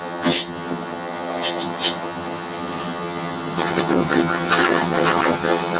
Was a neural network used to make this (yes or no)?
yes